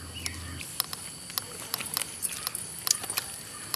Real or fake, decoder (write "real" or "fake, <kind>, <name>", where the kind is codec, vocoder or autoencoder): real